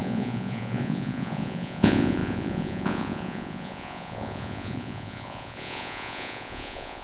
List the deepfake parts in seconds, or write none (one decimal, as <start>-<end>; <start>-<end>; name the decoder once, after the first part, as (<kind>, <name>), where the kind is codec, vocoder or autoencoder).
0.0-7.0 (vocoder, Vocos)